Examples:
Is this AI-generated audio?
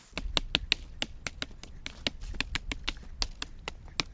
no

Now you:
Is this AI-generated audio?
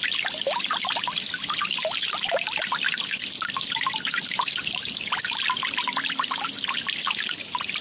no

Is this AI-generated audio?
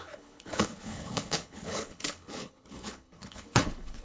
yes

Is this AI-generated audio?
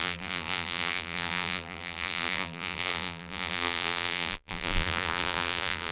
yes